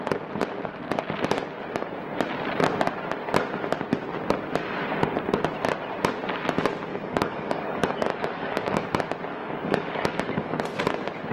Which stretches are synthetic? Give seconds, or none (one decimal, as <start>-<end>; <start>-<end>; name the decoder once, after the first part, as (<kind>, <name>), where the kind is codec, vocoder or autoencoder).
6.9-8.8 (codec, DAC); 9.3-10.6